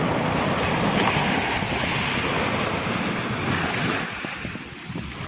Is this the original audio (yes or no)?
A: yes